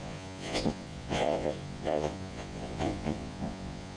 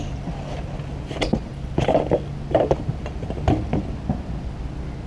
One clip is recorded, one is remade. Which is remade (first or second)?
first